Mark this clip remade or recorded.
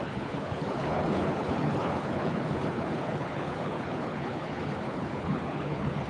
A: remade